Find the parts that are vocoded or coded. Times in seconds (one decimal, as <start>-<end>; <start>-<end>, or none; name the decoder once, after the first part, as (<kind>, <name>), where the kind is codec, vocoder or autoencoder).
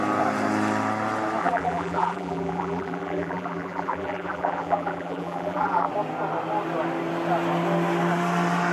1.4-5.9 (vocoder, BigVGAN v2)